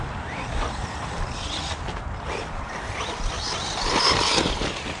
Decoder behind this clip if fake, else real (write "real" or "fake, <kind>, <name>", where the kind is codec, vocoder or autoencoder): real